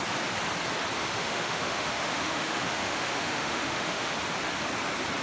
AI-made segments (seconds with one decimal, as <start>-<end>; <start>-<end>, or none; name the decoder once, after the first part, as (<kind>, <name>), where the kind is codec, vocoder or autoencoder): 1.0-4.1 (autoencoder, DAC-VAE)